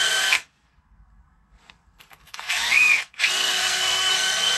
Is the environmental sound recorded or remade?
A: remade